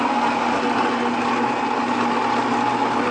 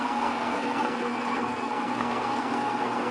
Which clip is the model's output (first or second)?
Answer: second